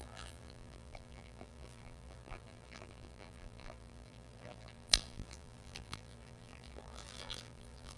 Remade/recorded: remade